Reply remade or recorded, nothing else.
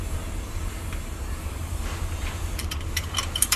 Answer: remade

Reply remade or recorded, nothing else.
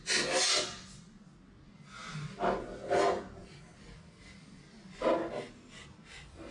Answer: recorded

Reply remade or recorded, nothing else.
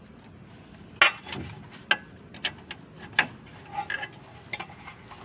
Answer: recorded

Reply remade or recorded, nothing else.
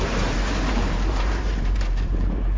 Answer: remade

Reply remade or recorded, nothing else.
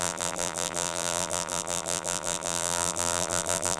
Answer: remade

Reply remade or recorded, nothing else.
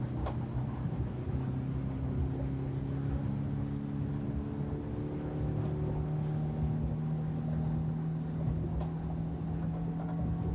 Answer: recorded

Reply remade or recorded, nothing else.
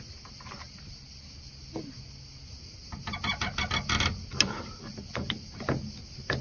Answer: recorded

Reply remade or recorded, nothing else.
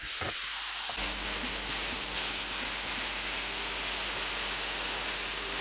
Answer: recorded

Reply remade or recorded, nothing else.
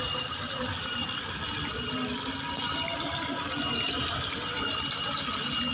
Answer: recorded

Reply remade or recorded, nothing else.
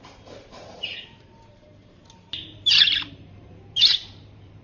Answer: remade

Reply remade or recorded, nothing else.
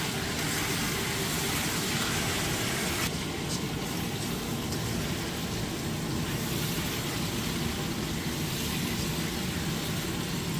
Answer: recorded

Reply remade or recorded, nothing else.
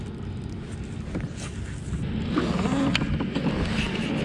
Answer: recorded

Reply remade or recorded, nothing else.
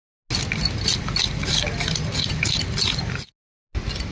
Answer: recorded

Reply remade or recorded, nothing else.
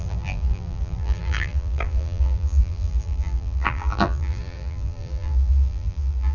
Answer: remade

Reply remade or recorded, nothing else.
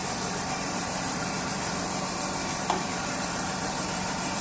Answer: remade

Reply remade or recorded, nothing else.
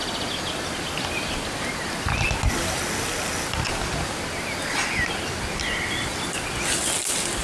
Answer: recorded